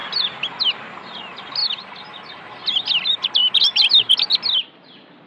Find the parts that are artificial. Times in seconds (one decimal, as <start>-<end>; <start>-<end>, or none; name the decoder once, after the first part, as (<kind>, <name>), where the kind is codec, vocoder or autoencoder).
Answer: none